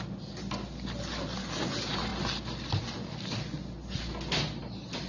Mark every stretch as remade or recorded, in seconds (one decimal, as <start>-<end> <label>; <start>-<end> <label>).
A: 0.0-5.1 recorded